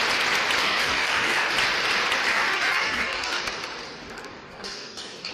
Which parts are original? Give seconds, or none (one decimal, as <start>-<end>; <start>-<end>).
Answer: 0.0-0.6; 1.5-2.3; 3.4-4.3